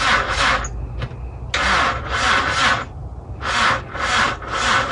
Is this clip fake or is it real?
real